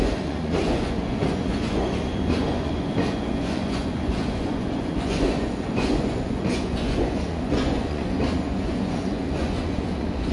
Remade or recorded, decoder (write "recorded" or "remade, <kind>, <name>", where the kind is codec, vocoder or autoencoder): remade, vocoder, Vocos